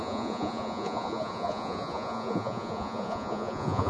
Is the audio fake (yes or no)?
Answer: yes